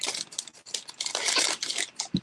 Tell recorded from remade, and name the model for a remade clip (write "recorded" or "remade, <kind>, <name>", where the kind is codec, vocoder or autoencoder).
recorded